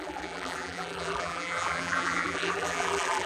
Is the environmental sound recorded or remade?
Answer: remade